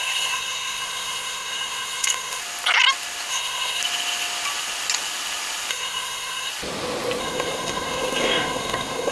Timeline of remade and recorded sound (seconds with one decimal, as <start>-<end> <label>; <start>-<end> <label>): 0.0-2.4 remade; 2.4-3.3 recorded; 3.3-3.8 remade; 3.8-5.7 recorded; 5.7-6.5 remade; 6.5-7.2 recorded; 7.2-9.1 remade